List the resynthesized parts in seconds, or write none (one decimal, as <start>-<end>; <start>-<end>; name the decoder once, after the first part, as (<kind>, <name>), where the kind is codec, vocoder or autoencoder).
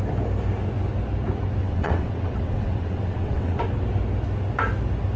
1.6-3.6 (vocoder, WaveNeXt)